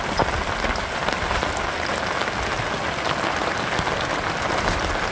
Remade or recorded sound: recorded